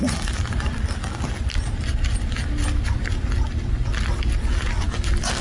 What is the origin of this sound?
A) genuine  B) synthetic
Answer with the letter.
A